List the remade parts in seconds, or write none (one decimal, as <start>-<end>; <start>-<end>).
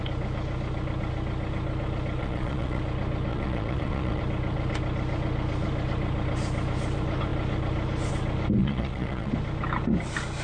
2.2-2.8; 3.3-4.2; 8.6-9.3